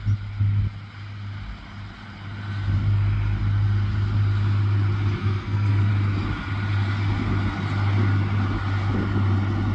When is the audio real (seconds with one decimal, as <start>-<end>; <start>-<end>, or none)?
0.0-5.2; 5.9-9.7